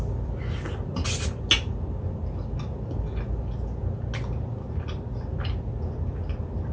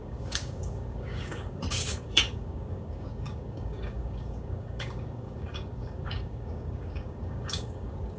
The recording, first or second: first